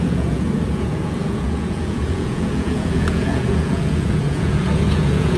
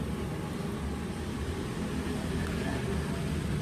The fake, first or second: first